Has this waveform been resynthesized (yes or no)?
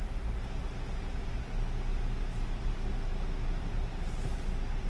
no